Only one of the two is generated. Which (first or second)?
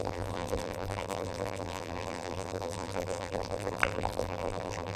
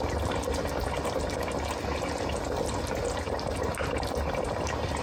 first